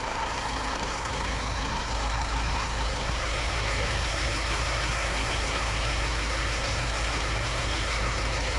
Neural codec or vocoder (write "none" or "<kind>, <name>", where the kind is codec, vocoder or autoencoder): codec, SNAC